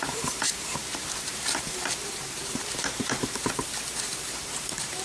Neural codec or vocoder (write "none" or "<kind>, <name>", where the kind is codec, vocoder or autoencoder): vocoder, BigVGAN v2